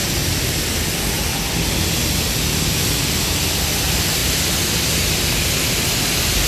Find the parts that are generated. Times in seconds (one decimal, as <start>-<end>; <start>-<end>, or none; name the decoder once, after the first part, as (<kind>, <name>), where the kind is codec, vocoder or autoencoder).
none